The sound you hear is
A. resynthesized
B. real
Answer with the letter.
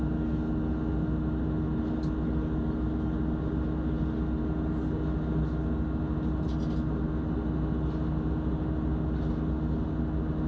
B